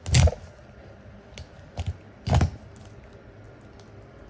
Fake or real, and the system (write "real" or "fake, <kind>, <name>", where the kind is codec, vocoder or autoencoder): real